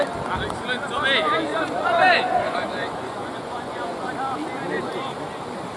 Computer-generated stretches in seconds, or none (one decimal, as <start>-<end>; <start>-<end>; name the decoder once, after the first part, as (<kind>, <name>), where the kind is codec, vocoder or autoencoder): 1.5-4.1 (vocoder, Vocos)